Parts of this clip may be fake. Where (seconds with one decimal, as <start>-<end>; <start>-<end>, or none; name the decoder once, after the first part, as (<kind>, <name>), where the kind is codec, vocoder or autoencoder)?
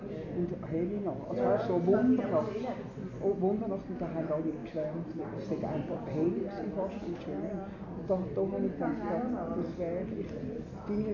none